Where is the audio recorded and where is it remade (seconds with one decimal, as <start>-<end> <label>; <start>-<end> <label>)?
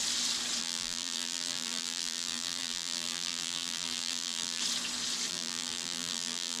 0.0-0.6 recorded; 0.6-4.6 remade; 4.6-5.3 recorded; 5.3-6.6 remade